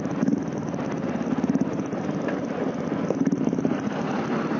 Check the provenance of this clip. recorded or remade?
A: recorded